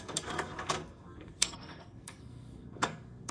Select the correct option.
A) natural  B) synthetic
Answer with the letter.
B